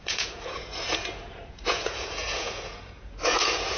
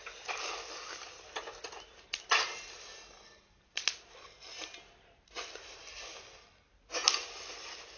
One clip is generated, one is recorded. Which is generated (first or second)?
first